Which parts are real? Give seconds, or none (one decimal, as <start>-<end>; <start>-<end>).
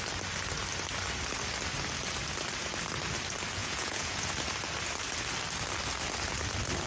0.0-3.6; 4.3-6.9